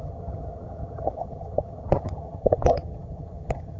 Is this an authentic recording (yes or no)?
no